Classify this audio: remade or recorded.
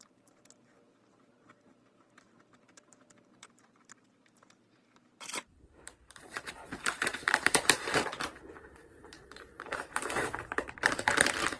remade